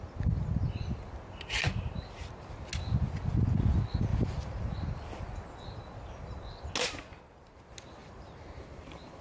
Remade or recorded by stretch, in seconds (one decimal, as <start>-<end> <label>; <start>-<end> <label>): 0.0-4.1 recorded; 4.1-4.6 remade; 4.6-8.0 recorded; 8.0-9.2 remade